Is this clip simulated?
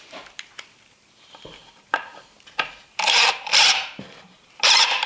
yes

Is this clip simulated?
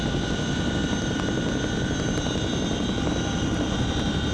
yes